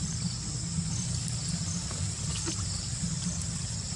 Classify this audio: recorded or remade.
remade